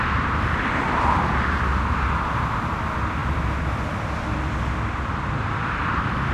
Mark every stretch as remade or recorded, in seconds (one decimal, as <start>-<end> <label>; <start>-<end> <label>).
0.0-6.3 remade